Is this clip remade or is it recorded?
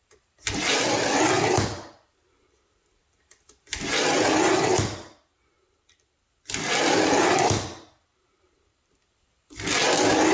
recorded